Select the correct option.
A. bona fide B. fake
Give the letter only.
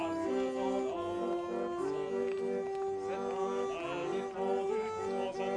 A